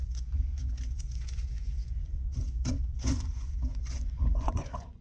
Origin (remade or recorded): remade